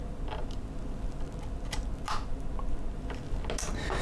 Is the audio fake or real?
real